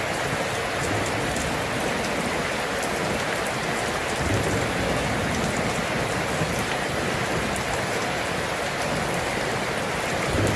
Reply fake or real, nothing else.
real